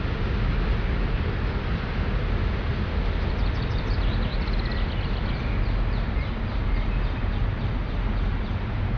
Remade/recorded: recorded